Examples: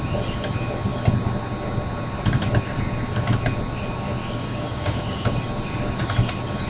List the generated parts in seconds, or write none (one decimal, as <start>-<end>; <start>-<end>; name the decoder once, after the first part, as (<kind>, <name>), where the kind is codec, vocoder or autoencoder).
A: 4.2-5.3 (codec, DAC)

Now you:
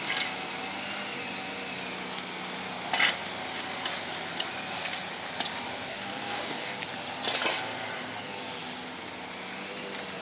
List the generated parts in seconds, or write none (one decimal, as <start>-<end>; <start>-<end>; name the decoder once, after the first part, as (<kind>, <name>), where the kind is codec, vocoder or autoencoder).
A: 5.9-6.8 (codec, DAC)

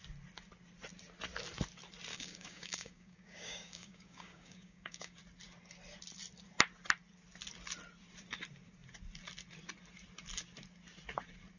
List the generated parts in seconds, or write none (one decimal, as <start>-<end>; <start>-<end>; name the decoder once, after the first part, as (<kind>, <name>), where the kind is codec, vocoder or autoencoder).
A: 2.1-5.2 (codec, DAC)

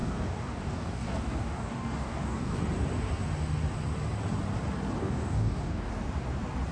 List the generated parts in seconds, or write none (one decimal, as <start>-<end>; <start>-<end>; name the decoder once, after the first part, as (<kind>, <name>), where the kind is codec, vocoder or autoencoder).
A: 0.0-2.6 (codec, DAC); 5.0-5.9